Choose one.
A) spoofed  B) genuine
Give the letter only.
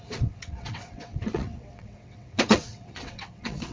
A